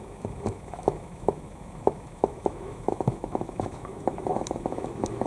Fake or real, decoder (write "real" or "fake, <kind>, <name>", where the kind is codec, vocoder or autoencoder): fake, autoencoder, DAC-VAE